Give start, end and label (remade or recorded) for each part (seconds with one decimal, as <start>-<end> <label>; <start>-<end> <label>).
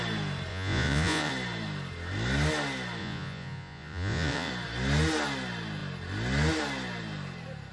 0.0-0.5 recorded; 0.5-1.3 remade; 1.3-3.0 recorded; 3.0-4.5 remade; 4.5-7.7 recorded